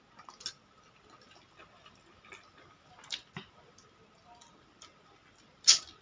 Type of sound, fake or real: real